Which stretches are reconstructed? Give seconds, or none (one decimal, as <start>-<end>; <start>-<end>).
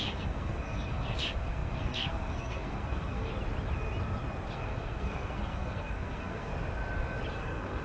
0.0-3.3; 4.5-6.5; 7.3-7.8